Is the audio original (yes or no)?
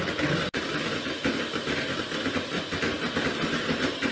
no